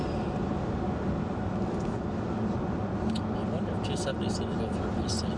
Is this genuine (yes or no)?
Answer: yes